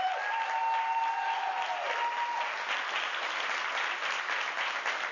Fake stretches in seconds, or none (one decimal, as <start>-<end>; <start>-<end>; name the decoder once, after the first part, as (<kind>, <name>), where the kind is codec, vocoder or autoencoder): none